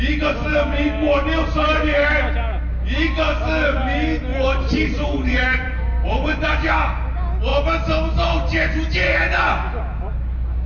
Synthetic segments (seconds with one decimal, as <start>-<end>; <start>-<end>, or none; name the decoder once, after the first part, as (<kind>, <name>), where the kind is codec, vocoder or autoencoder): 0.5-2.1 (vocoder, BigVGAN v2); 4.3-6.7